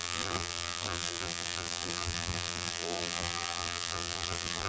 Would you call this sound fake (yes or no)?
yes